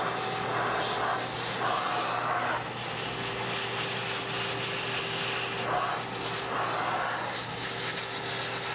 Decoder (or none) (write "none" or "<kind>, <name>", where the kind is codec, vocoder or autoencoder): none